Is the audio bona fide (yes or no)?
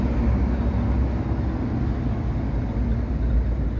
yes